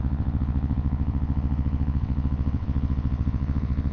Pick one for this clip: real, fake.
fake